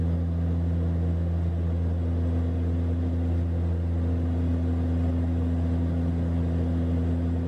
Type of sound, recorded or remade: recorded